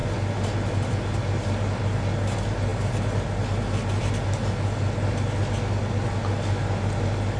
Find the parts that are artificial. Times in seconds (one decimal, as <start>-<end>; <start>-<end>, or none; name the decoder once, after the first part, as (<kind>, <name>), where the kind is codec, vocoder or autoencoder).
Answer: none